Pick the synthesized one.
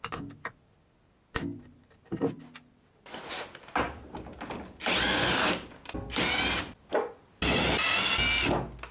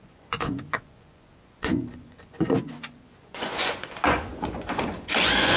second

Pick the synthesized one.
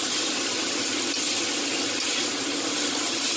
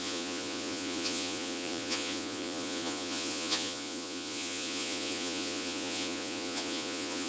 second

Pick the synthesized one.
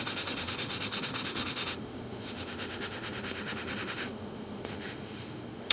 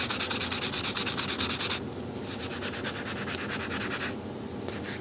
first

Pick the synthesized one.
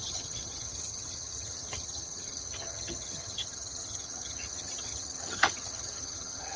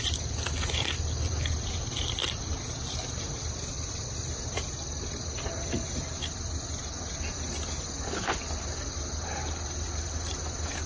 first